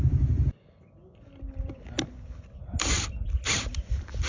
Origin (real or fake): real